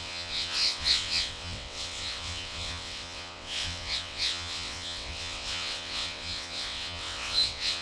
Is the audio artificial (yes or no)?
yes